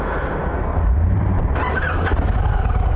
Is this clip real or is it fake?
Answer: real